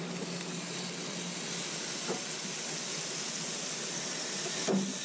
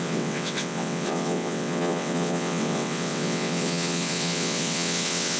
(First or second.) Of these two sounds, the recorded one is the first